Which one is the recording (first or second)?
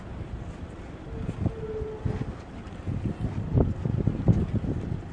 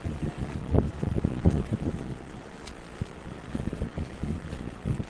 first